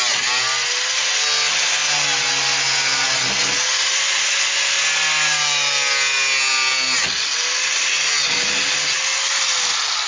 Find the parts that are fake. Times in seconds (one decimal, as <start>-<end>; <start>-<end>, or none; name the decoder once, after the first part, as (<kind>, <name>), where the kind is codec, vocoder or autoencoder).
none